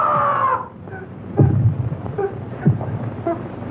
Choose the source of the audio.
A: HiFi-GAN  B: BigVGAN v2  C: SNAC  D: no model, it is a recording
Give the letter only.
B